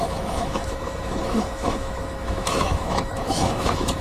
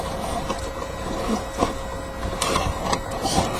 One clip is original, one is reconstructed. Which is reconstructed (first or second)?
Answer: first